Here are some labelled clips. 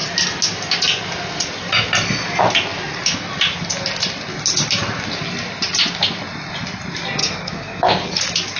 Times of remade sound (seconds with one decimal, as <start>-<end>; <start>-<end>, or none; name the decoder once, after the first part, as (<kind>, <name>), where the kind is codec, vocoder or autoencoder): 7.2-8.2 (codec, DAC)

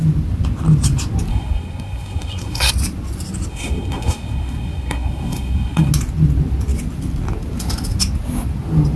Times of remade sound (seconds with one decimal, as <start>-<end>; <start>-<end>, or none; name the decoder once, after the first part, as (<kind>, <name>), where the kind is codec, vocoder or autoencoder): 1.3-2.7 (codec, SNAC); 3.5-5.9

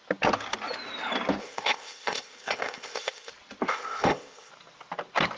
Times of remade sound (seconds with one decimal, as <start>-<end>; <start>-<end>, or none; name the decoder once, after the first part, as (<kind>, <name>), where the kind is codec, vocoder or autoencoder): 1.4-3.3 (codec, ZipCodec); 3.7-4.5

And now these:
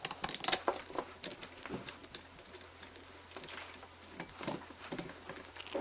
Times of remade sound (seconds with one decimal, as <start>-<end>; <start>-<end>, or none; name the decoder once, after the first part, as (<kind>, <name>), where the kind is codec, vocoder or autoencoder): none

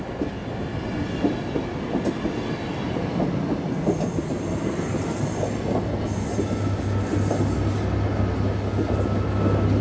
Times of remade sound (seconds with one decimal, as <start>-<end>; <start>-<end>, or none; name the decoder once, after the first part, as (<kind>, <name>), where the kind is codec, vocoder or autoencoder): none

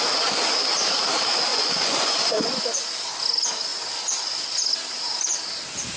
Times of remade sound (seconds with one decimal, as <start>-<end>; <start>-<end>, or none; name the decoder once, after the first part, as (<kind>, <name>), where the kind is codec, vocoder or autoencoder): 1.5-2.5 (vocoder, Vocos)